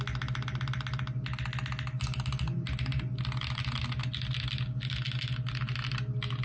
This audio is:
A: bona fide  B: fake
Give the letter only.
A